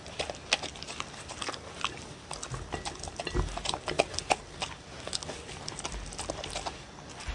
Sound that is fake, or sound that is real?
real